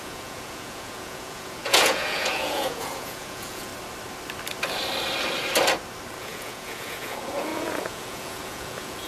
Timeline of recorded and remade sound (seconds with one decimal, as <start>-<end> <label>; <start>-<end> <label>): 0.0-3.7 remade; 3.7-6.2 recorded; 6.2-9.1 remade